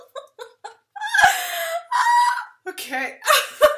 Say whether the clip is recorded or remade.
recorded